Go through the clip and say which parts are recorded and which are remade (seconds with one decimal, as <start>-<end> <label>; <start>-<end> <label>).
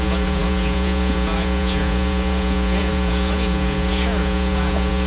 0.0-5.1 remade